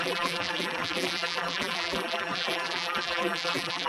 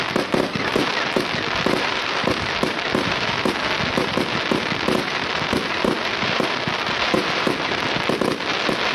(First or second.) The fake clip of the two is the first